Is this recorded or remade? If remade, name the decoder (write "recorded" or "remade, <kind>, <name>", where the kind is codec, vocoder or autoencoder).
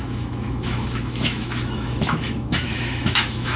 remade, autoencoder, DAC-VAE